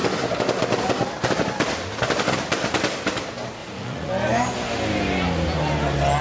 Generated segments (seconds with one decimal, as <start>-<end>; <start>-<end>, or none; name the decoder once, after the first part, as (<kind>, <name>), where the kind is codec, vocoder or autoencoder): 3.6-4.1 (vocoder, Vocos)